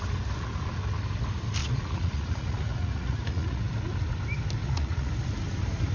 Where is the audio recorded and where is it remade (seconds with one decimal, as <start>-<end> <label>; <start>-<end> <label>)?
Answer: 0.0-1.6 recorded; 1.6-3.6 remade; 3.6-4.6 recorded; 4.6-5.1 remade; 5.1-5.9 recorded